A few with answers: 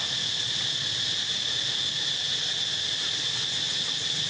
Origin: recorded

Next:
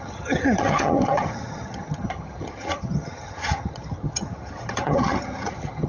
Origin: remade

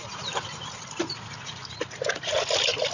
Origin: recorded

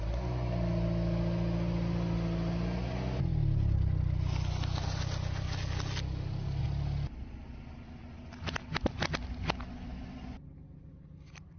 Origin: recorded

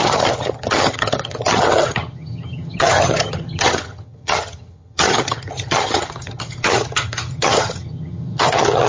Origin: remade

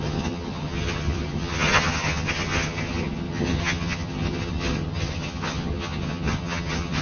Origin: remade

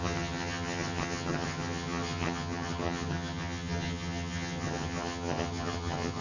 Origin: remade